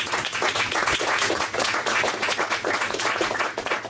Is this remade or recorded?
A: remade